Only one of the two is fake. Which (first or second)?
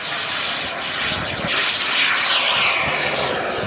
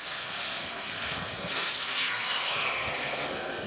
second